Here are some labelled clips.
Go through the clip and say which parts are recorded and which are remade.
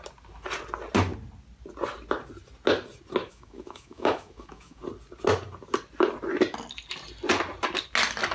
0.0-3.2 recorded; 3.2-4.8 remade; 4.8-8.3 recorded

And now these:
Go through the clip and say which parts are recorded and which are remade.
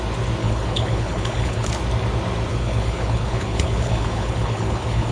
0.0-0.4 recorded; 0.4-1.7 remade; 1.7-2.5 recorded; 2.5-5.1 remade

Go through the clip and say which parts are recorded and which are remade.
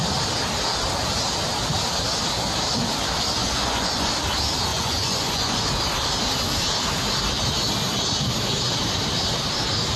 0.0-3.4 recorded; 3.4-4.1 remade; 4.1-4.7 recorded; 4.7-5.7 remade; 5.7-10.0 recorded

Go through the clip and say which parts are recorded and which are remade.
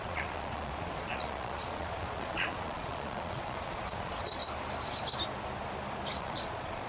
0.0-4.4 remade; 4.4-6.2 recorded; 6.2-6.9 remade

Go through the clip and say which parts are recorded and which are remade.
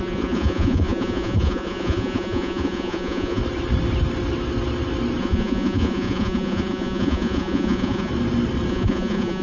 0.0-3.4 remade; 3.4-5.2 recorded; 5.2-8.1 remade; 8.1-8.7 recorded; 8.7-9.4 remade